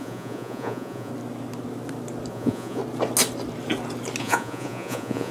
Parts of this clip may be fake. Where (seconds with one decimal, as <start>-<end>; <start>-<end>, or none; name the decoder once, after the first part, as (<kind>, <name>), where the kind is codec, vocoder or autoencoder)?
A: 0.0-1.1 (vocoder, Vocos); 2.3-2.8; 4.2-5.3